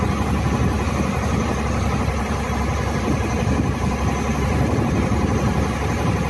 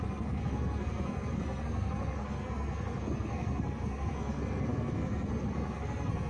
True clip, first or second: first